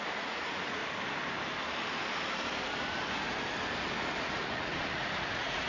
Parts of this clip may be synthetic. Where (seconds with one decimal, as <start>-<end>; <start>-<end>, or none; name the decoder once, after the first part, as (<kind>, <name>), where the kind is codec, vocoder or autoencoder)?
0.0-0.8 (vocoder, Vocos); 4.2-5.7